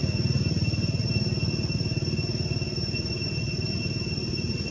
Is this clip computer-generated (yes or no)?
no